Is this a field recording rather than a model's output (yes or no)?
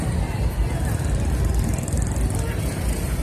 yes